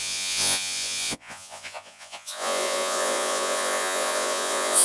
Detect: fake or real fake